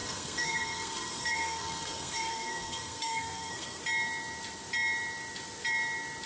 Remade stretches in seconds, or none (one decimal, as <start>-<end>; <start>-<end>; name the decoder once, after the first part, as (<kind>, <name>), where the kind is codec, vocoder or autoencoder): 0.0-3.8 (codec, SNAC)